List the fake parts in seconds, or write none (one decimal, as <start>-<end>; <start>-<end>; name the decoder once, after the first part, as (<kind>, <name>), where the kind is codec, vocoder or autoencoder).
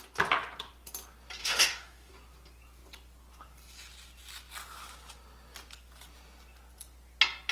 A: 1.4-2.1 (autoencoder, DAC-VAE)